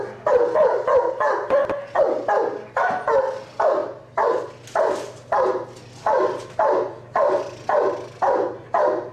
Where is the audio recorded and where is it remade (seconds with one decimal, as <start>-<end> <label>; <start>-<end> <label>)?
0.0-9.1 recorded